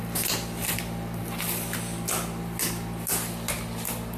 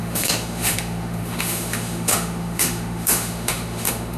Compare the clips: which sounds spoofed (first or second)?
second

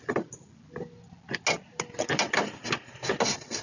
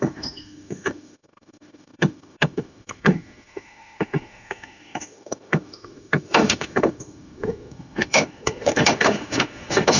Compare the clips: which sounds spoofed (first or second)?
second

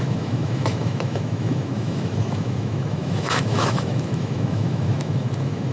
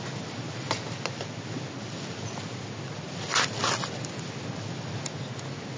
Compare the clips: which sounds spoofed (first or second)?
first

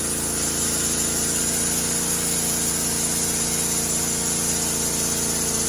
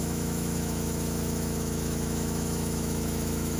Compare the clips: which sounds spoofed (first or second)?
second